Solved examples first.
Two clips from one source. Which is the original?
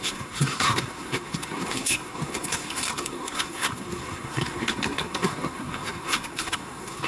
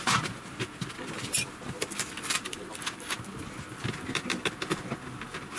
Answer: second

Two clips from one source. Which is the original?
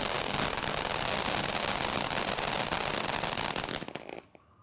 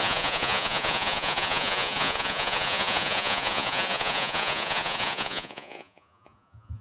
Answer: first